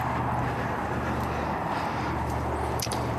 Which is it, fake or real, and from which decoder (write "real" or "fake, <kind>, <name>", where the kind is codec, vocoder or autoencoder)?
fake, vocoder, BigVGAN v2